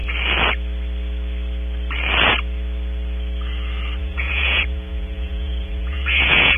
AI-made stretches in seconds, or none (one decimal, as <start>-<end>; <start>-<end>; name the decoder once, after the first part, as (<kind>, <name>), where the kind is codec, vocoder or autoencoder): 4.0-6.6 (vocoder, Vocos)